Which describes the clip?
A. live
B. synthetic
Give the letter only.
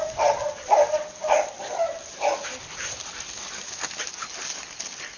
A